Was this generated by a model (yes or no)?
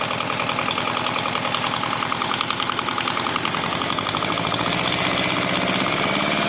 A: no